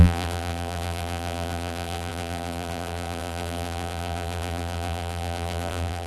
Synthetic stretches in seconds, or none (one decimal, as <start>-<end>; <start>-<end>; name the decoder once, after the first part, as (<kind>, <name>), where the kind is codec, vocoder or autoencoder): 0.0-6.1 (vocoder, BigVGAN v2)